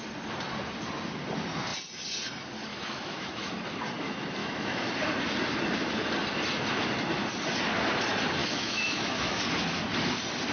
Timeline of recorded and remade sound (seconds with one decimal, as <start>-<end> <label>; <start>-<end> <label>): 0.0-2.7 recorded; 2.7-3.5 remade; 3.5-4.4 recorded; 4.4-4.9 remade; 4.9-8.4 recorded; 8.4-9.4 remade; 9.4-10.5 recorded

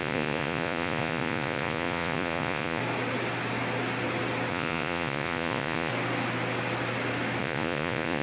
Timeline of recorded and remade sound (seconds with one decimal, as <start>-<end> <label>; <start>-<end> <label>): 0.0-2.8 remade; 2.8-4.5 recorded; 4.5-5.9 remade; 5.9-7.4 recorded; 7.4-8.2 remade

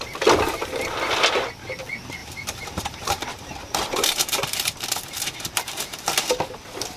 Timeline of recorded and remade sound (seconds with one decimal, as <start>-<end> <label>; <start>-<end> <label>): 0.0-2.2 recorded; 2.2-6.3 remade; 6.3-7.0 recorded